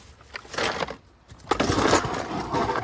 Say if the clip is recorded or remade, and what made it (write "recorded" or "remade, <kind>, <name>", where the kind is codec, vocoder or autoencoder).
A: recorded